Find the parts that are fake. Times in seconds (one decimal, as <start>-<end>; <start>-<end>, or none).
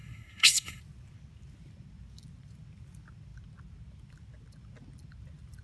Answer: 0.0-0.8